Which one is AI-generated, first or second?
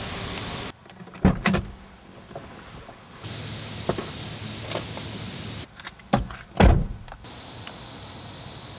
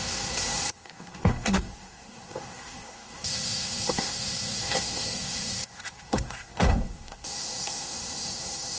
second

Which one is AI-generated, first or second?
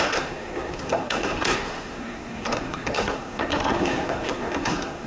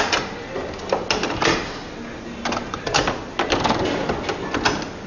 first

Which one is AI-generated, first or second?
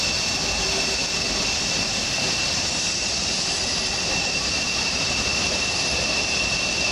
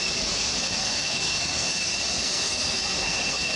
second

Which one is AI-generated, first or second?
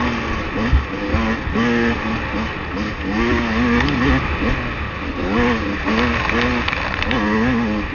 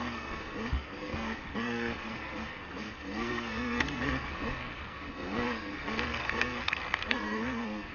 second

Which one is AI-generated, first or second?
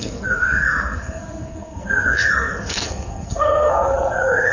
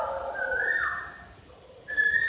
first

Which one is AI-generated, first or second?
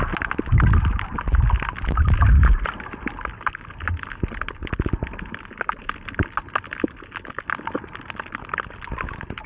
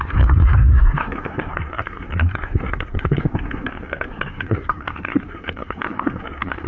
second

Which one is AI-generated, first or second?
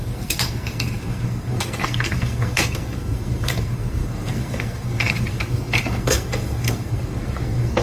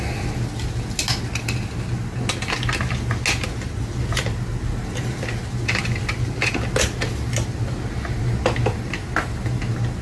first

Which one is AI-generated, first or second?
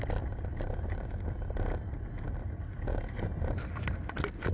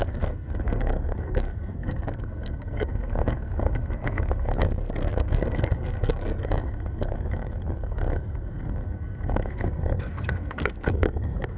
second